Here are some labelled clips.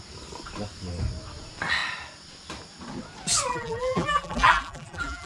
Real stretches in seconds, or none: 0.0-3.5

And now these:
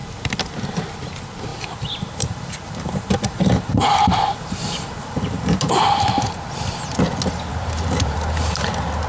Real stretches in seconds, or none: 0.0-1.5; 5.8-7.5; 8.7-9.1

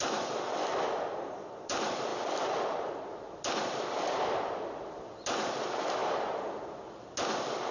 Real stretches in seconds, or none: 0.0-2.1; 2.9-7.7

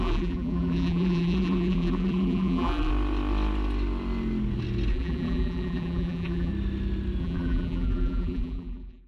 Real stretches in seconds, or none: 2.9-4.9; 6.5-7.2

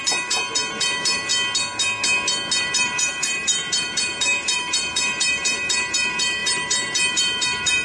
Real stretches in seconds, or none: 1.3-2.6

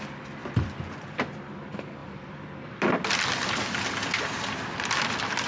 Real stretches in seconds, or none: 0.0-0.4; 1.3-2.0; 2.9-5.5

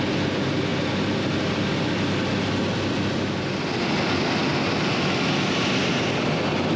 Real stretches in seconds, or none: 0.0-6.8

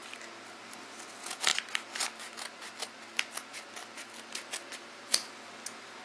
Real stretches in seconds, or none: 0.0-6.0